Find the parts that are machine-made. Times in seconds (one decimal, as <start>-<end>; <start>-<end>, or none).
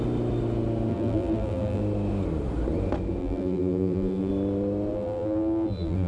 0.9-1.8; 3.2-4.3; 4.9-6.1